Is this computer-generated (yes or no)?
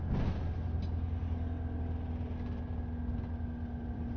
no